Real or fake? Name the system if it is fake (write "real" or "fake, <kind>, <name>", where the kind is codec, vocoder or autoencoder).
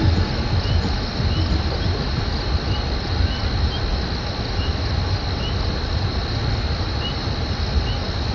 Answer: real